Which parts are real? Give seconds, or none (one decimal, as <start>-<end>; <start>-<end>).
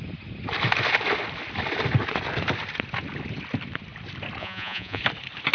0.0-4.4; 5.0-5.5